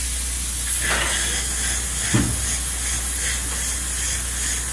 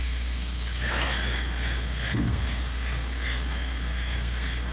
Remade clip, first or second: second